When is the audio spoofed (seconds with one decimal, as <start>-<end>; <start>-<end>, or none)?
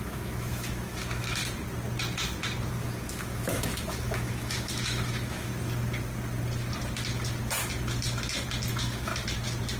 0.0-1.4; 2.7-5.5; 8.7-9.1